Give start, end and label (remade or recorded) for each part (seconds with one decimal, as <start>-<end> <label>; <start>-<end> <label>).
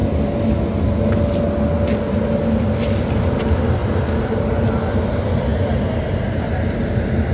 0.0-7.3 recorded